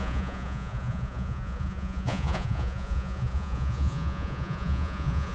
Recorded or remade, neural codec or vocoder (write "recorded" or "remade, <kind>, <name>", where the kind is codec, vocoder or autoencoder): remade, vocoder, Vocos